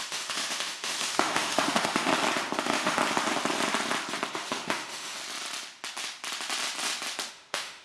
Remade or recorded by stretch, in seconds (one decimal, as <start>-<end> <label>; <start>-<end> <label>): 0.0-2.1 remade; 2.1-2.6 recorded; 2.6-3.0 remade; 3.0-4.3 recorded; 4.3-5.2 remade; 5.2-7.3 recorded; 7.3-7.8 remade